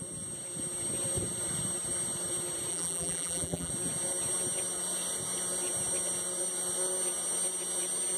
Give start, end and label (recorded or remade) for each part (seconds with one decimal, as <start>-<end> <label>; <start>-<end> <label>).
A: 0.0-2.7 recorded; 2.7-3.7 remade; 3.7-8.2 recorded